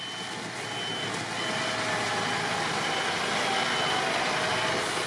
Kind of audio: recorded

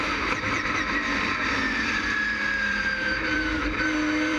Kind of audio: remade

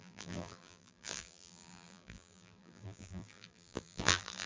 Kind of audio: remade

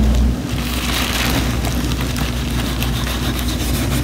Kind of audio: recorded